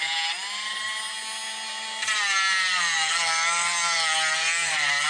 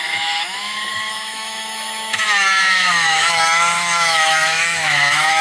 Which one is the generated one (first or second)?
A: second